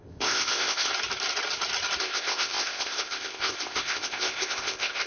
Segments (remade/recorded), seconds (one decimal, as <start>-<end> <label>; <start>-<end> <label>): 0.0-0.9 remade; 0.9-2.0 recorded; 2.0-5.1 remade